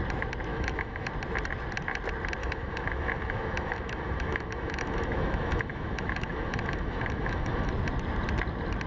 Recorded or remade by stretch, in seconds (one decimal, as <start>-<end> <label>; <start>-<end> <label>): 0.0-0.5 recorded; 0.5-1.1 remade; 1.1-2.4 recorded; 2.4-7.7 remade; 7.7-8.9 recorded